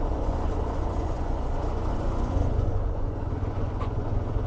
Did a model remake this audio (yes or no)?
yes